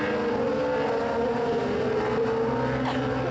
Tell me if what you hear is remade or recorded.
recorded